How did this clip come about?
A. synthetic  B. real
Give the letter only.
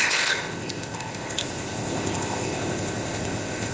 A